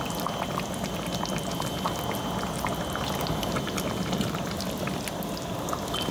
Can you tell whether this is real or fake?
real